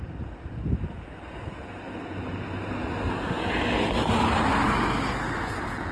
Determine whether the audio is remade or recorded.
recorded